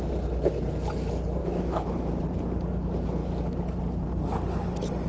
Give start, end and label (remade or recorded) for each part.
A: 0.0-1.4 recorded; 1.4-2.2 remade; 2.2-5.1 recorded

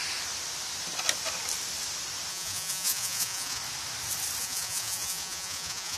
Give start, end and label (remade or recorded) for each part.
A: 0.0-2.3 recorded; 2.3-3.6 remade; 3.6-4.4 recorded; 4.4-6.0 remade